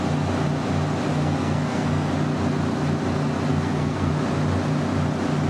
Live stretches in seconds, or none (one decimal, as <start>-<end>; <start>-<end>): 0.0-1.1; 2.1-3.5; 4.1-5.5